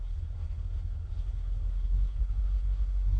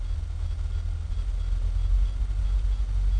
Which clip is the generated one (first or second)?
first